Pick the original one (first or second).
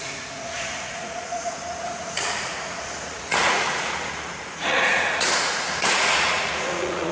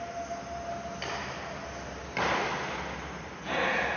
second